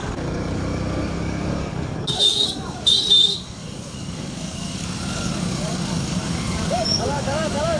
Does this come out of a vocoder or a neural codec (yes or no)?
yes